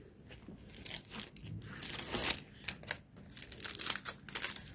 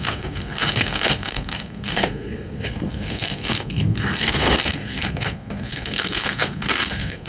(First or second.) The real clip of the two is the first